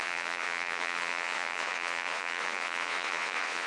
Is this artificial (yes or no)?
yes